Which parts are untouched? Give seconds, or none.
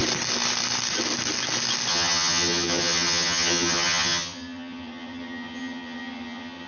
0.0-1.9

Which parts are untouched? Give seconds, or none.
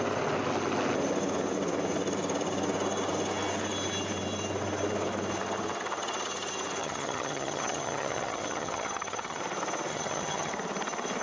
0.0-6.8; 9.4-9.9; 10.5-11.2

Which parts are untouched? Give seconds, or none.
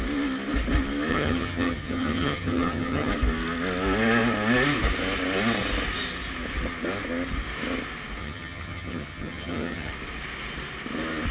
0.0-1.1; 3.1-8.2; 9.9-11.3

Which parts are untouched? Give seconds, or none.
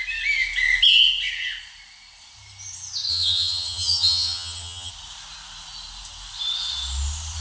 0.0-3.1; 4.9-7.4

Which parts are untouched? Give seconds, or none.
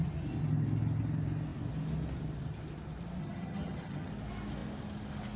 0.0-3.2; 4.1-5.4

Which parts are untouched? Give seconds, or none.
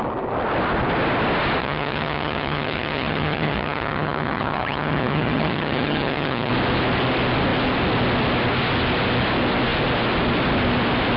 0.0-1.6; 6.5-11.2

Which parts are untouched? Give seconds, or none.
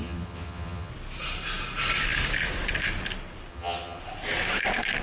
0.9-3.5; 4.0-5.0